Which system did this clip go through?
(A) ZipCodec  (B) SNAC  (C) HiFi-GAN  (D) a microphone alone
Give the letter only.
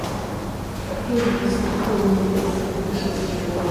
D